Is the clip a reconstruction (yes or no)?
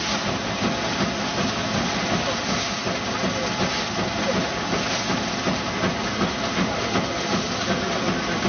no